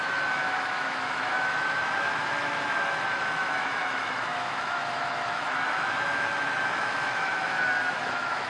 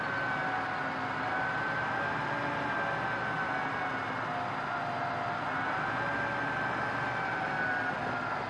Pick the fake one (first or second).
first